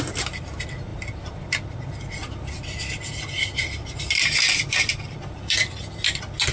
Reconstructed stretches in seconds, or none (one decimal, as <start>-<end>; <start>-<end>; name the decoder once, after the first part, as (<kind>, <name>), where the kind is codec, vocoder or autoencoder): 0.9-1.4 (vocoder, BigVGAN v2); 2.2-5.8